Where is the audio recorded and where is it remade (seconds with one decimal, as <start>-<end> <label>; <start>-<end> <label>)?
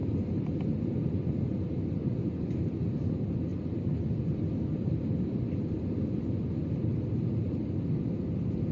0.0-8.7 recorded